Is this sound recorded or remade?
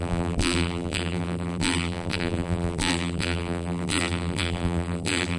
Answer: remade